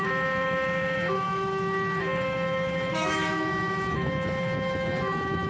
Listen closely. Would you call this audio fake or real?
fake